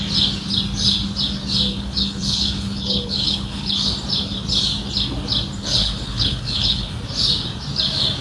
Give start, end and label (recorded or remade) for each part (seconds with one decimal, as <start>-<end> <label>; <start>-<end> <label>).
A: 0.0-1.7 recorded; 1.7-3.9 remade; 3.9-5.6 recorded; 5.6-6.9 remade; 6.9-8.2 recorded